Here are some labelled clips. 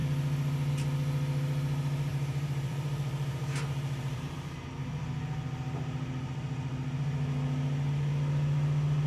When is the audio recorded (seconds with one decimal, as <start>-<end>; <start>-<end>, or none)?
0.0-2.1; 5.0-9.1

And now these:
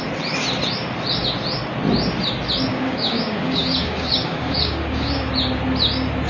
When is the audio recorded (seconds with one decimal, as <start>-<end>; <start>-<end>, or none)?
0.0-2.7; 5.3-6.3

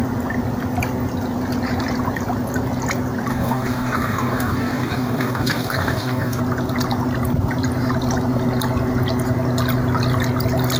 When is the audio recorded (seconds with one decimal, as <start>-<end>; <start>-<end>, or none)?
0.0-3.3; 6.4-10.8